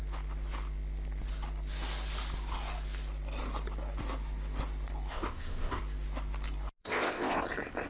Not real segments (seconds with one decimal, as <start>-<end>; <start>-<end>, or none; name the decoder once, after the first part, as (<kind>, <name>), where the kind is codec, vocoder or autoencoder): 5.1-5.8 (codec, ZipCodec); 6.8-7.4